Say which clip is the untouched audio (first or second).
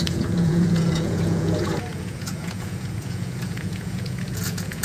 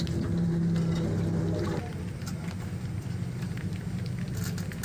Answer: second